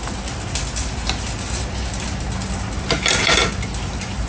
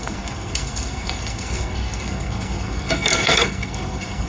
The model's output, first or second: second